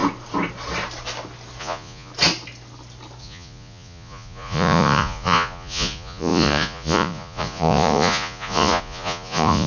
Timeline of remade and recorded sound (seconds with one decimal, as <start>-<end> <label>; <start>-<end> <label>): 0.0-1.6 recorded; 1.6-2.1 remade; 2.1-3.2 recorded; 3.2-9.7 remade